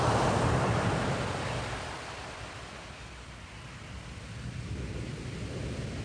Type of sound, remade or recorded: recorded